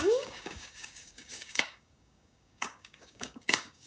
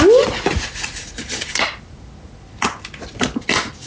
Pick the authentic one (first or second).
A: second